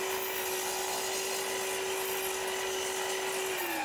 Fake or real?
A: real